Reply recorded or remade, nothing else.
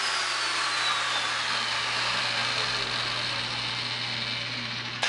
recorded